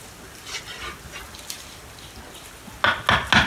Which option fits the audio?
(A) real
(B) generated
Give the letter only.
A